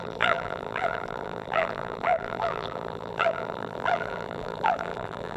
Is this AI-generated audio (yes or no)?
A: yes